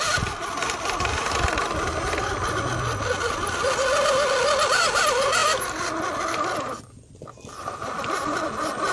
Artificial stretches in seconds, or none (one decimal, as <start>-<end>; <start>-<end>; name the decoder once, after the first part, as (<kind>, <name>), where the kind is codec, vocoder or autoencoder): none